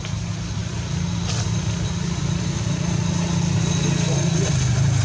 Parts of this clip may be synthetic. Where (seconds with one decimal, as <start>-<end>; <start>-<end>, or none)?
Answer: none